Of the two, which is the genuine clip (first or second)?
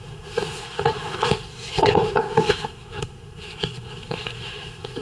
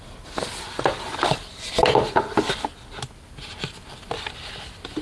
second